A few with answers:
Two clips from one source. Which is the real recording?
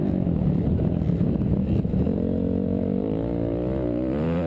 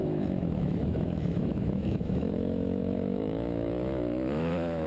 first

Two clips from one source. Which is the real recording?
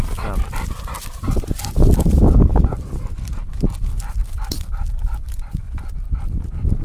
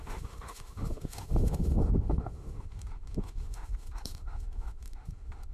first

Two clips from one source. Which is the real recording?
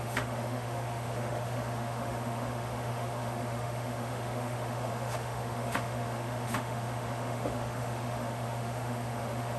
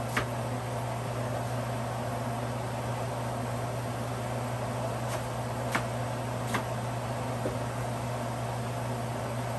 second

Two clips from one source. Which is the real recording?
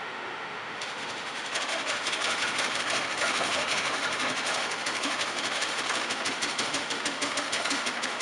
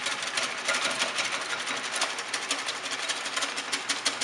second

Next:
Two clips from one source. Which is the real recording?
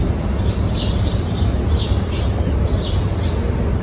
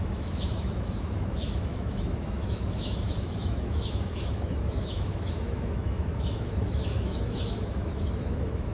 first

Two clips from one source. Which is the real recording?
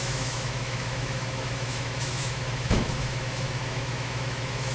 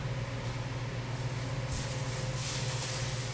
second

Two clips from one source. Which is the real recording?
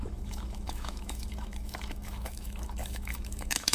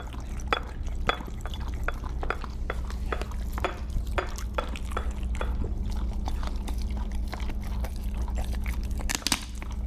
second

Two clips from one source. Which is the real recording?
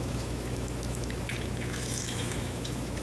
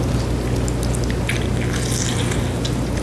second